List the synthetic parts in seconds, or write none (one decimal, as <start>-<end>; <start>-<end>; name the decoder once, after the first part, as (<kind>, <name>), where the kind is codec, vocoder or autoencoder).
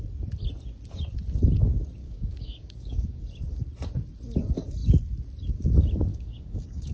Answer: 2.0-3.2 (codec, DAC); 6.1-6.9